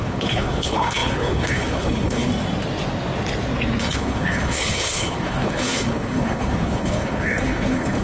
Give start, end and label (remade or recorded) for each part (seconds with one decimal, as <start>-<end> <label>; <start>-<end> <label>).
0.0-2.3 remade; 2.3-3.8 recorded; 3.8-8.0 remade